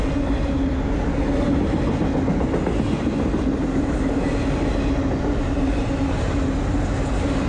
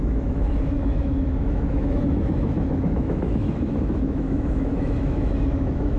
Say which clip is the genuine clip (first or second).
first